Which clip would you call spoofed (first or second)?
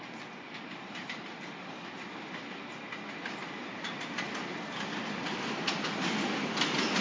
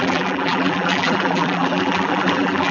second